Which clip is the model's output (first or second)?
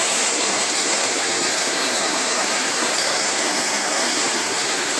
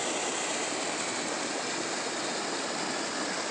first